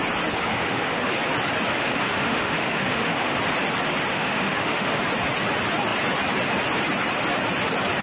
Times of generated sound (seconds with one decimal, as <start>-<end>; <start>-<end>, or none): 0.4-1.1; 1.7-3.4; 4.1-5.0

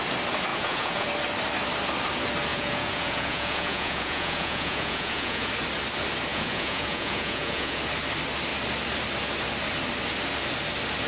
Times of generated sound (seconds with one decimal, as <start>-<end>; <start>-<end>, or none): 0.5-1.1; 2.5-5.5; 6.3-7.8

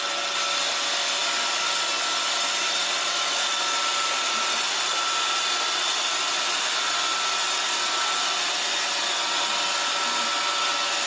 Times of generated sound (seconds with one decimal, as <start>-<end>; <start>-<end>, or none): none

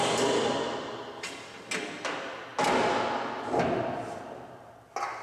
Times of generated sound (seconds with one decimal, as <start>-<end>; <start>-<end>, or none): none

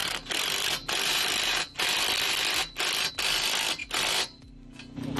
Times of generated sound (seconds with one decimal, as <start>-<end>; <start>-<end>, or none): none

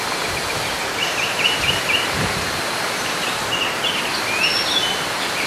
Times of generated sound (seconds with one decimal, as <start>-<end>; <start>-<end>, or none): 0.8-3.4